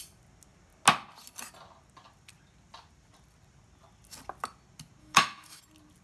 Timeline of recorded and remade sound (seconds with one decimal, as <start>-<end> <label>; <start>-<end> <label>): 0.0-5.0 recorded; 5.0-5.6 remade; 5.6-6.0 recorded